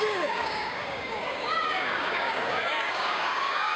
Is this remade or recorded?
remade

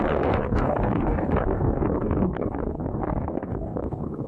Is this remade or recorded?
remade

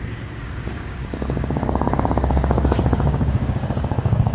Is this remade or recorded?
remade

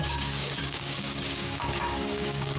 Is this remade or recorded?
remade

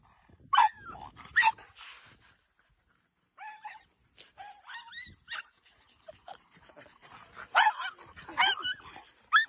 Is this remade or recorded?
recorded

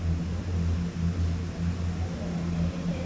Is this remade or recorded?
recorded